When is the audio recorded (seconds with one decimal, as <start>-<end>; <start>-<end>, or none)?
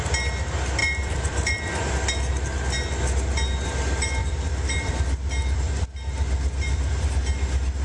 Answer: 0.0-0.8; 1.9-4.2; 4.9-7.8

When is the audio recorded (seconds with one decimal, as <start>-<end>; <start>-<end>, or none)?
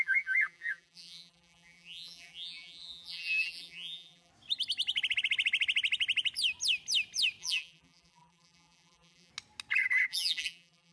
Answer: 4.3-7.4; 9.3-10.1